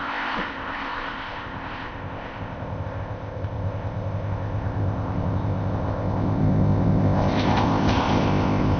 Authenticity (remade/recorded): remade